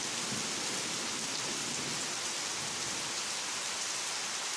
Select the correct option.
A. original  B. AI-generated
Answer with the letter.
A